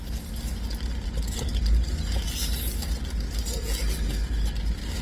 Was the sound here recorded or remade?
recorded